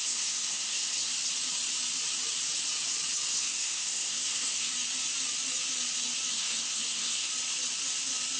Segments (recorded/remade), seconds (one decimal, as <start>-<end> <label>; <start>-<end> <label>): 0.0-1.1 remade; 1.1-3.3 recorded; 3.3-4.7 remade; 4.7-6.3 recorded; 6.3-7.3 remade; 7.3-8.4 recorded